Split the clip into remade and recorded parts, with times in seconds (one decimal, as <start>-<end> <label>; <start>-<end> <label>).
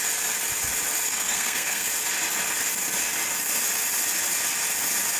0.0-1.1 recorded; 1.1-1.9 remade; 1.9-5.2 recorded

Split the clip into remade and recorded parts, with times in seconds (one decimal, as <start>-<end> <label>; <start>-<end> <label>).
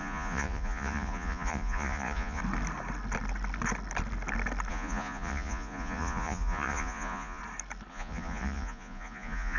0.0-2.4 remade; 2.4-4.7 recorded; 4.7-7.4 remade; 7.4-7.9 recorded; 7.9-9.6 remade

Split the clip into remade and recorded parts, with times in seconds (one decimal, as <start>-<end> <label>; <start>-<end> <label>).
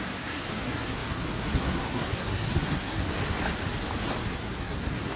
0.0-3.1 remade; 3.1-4.3 recorded; 4.3-5.2 remade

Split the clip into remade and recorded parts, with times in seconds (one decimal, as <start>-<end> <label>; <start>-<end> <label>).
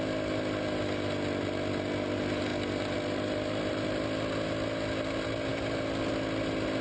0.0-6.8 recorded